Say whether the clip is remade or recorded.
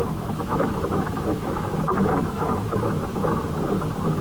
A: remade